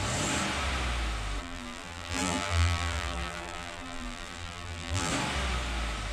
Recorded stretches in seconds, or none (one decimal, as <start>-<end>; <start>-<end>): 0.0-1.4; 5.1-6.1